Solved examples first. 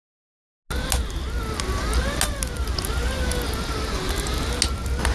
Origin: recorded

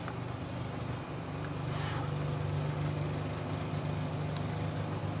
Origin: recorded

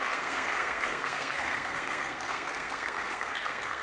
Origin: remade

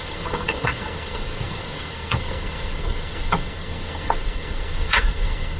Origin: remade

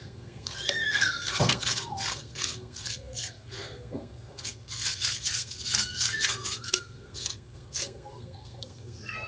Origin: remade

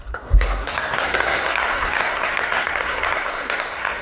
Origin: remade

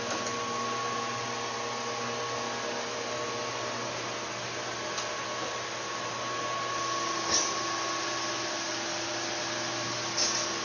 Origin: recorded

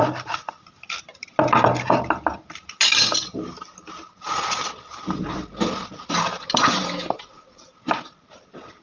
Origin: recorded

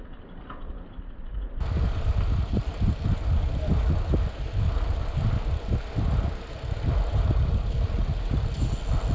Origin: recorded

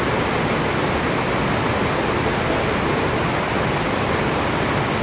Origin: recorded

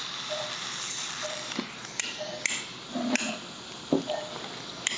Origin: recorded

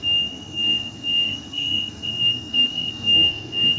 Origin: remade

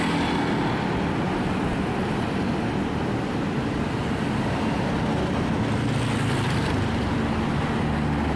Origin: recorded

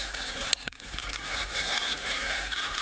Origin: remade